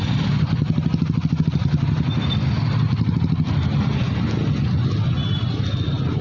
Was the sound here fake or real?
real